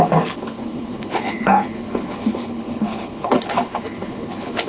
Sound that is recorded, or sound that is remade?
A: remade